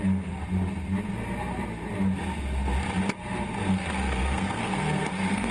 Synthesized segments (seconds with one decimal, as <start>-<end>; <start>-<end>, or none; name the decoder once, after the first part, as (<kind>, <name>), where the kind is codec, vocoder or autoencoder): 0.0-0.4 (codec, SNAC); 3.7-5.5